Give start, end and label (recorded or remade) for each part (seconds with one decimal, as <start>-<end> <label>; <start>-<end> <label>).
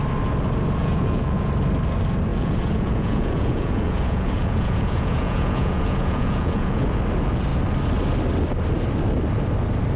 0.0-0.8 recorded; 0.8-1.5 remade; 1.5-2.3 recorded; 2.3-7.0 remade; 7.0-10.0 recorded